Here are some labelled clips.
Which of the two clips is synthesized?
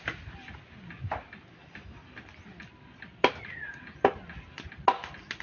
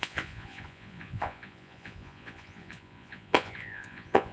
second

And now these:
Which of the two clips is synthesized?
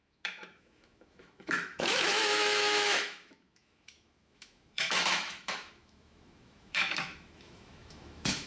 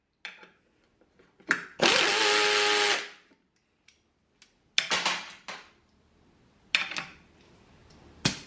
first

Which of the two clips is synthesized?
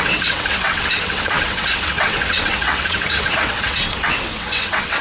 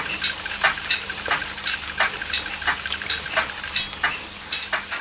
first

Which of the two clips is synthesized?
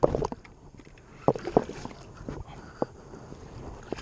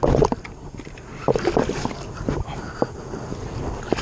first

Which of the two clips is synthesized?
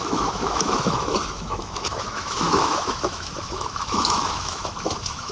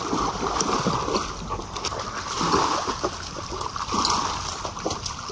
first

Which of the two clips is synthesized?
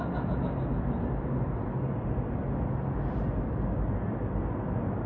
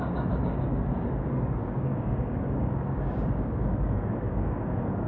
second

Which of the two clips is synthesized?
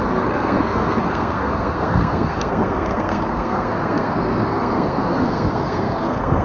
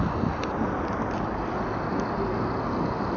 first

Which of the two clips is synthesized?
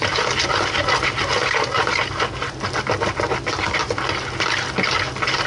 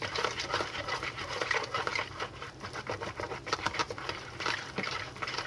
second